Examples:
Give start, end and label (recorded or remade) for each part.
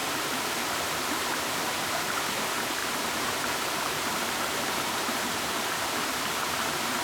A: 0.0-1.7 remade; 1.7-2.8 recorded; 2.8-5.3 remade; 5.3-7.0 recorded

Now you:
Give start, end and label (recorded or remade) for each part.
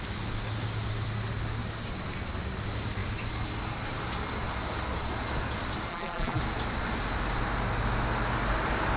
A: 0.0-5.9 recorded; 5.9-6.4 remade; 6.4-9.0 recorded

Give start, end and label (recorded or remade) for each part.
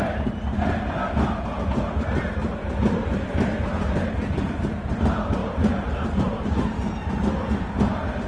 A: 0.0-2.4 recorded; 2.4-3.4 remade; 3.4-5.4 recorded; 5.4-6.5 remade; 6.5-8.3 recorded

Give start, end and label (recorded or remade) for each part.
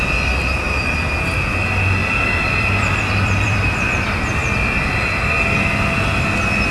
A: 0.0-2.0 recorded; 2.0-3.9 remade; 3.9-6.7 recorded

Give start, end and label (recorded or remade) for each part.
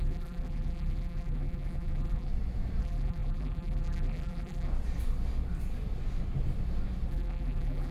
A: 0.0-2.3 remade; 2.3-2.8 recorded; 2.8-4.7 remade; 4.7-7.1 recorded; 7.1-7.9 remade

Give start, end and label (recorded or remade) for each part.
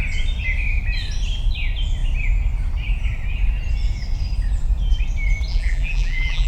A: 0.0-5.5 recorded; 5.5-6.5 remade